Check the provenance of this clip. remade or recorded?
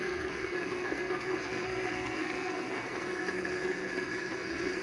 remade